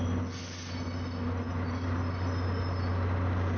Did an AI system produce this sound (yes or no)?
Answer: no